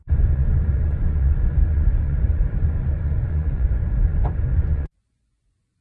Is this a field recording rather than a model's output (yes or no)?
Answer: no